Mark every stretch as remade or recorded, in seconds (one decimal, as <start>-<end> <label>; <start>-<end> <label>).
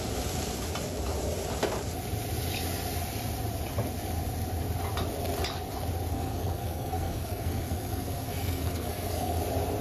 0.0-6.1 recorded; 6.1-9.4 remade; 9.4-9.8 recorded